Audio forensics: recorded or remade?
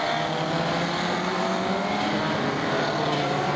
recorded